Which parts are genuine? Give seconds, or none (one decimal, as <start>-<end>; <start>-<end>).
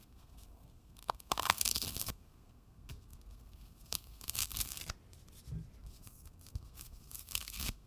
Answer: 4.8-5.8